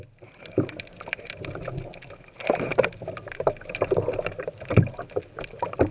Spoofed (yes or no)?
yes